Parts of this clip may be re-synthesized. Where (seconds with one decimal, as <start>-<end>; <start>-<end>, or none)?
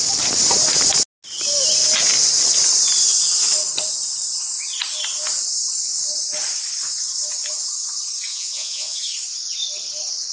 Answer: 8.3-9.0